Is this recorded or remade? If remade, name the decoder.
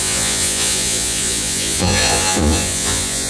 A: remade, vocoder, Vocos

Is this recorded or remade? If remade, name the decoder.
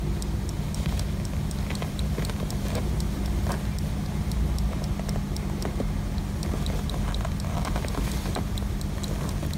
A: recorded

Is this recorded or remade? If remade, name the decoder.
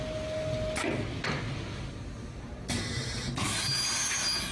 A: recorded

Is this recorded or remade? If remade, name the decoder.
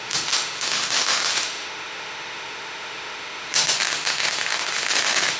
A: remade, autoencoder, DAC-VAE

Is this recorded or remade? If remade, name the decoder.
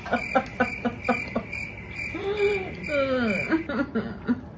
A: recorded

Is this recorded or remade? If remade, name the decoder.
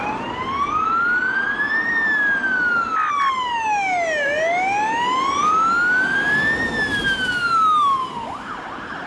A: recorded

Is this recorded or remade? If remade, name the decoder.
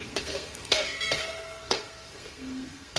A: remade, codec, SNAC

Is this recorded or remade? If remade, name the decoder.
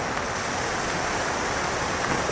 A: recorded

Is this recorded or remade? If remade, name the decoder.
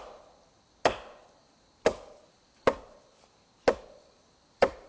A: recorded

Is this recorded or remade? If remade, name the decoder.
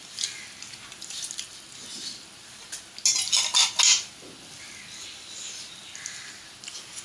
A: recorded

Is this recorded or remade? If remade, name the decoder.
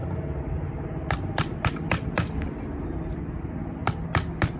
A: recorded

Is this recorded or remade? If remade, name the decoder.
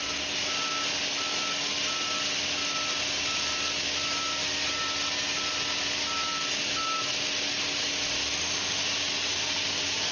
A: recorded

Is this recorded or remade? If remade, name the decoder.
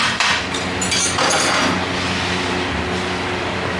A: recorded